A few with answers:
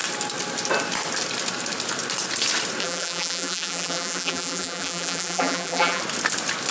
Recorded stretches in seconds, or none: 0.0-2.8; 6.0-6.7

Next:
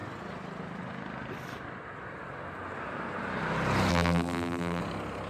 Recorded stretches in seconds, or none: 0.0-3.9; 4.8-5.3

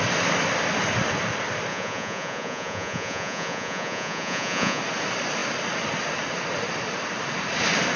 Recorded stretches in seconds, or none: 0.0-1.7; 4.8-8.0

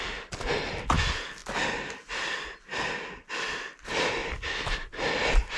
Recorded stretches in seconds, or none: 0.0-5.6